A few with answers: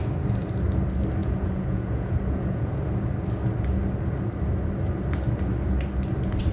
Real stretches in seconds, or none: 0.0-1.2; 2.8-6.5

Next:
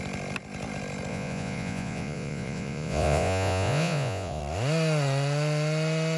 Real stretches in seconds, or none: 0.0-1.1; 4.4-6.2

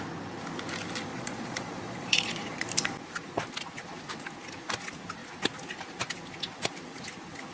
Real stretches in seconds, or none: 0.0-1.1; 2.7-7.5

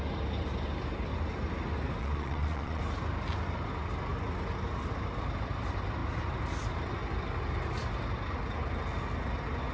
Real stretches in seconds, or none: 0.0-2.0; 2.8-9.7

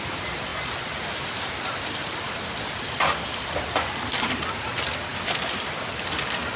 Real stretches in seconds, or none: 0.0-6.6

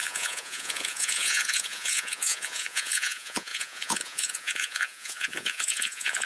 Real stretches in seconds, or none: none

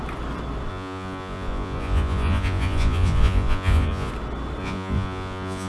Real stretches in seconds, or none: 0.0-0.7; 4.1-4.6